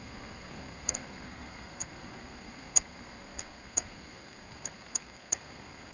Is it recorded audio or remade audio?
remade